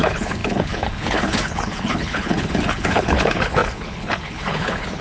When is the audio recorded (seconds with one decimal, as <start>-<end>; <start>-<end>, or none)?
none